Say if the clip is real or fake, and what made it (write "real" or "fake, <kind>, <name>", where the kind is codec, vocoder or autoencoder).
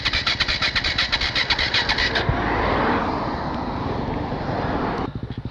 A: real